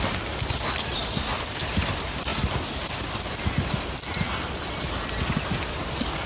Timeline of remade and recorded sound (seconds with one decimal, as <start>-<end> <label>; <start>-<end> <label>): 0.0-6.3 recorded